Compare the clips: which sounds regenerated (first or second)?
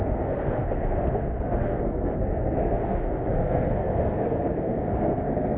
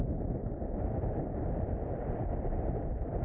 first